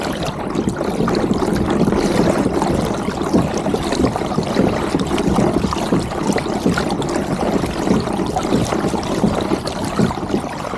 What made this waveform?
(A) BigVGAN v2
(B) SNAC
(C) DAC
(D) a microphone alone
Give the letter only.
D